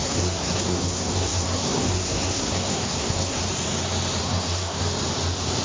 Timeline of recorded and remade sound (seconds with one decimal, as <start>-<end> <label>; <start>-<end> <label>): 0.0-3.4 remade; 3.4-4.2 recorded; 4.2-4.8 remade; 4.8-5.6 recorded